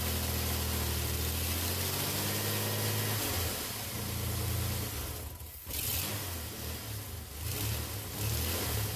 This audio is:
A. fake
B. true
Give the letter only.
B